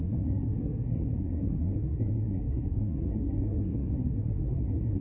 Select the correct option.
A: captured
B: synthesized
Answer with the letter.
B